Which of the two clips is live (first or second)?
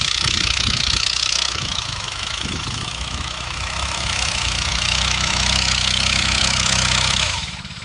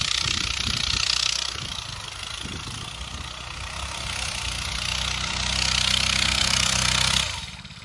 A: second